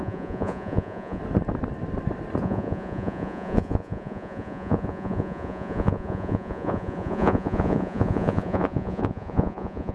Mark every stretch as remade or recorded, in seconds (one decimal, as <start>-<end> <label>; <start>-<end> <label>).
0.0-1.2 remade; 1.2-2.4 recorded; 2.4-9.9 remade

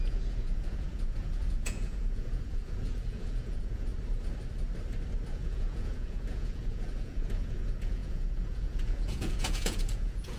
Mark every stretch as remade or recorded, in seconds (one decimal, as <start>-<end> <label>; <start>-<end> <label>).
0.0-3.9 remade; 3.9-5.3 recorded; 5.3-10.4 remade

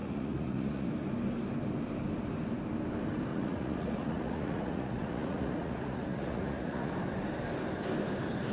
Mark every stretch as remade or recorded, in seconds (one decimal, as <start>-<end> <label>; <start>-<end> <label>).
0.0-0.9 remade; 0.9-3.3 recorded; 3.3-6.9 remade; 6.9-8.5 recorded

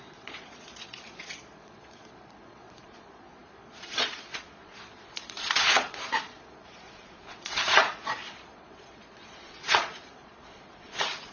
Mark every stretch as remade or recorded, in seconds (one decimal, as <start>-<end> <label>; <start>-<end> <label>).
0.0-11.3 remade

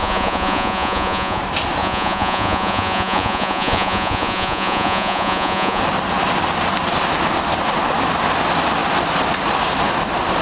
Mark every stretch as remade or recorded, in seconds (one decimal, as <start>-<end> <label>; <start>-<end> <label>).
0.0-1.4 remade; 1.4-1.8 recorded; 1.8-5.8 remade; 5.8-10.4 recorded